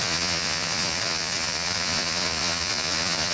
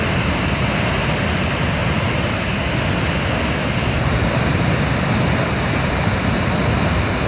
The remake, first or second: first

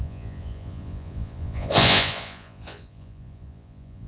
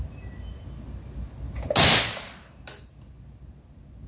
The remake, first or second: first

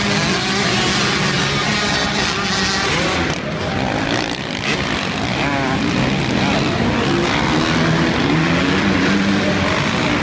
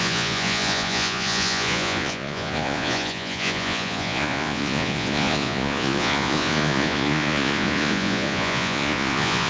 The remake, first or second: second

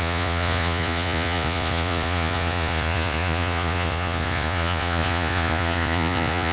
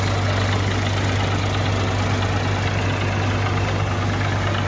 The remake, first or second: first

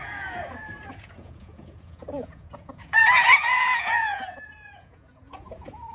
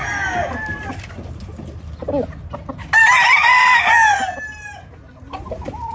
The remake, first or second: first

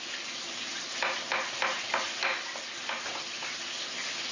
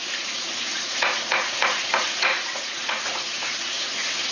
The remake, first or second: second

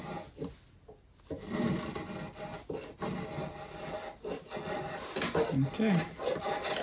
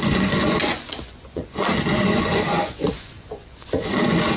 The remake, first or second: second